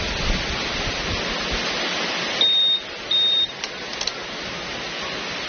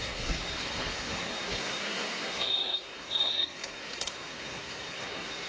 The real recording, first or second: first